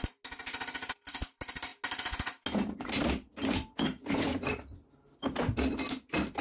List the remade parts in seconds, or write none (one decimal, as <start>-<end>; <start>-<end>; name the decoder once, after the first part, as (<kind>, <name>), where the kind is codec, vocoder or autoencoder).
none

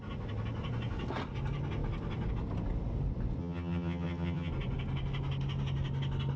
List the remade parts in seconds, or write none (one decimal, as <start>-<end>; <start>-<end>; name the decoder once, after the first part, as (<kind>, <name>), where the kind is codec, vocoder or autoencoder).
3.4-4.5 (vocoder, HiFi-GAN)

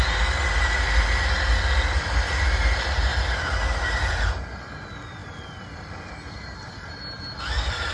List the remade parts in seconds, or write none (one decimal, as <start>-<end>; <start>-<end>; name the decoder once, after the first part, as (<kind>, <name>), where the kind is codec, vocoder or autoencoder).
none